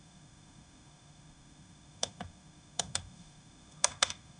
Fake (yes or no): yes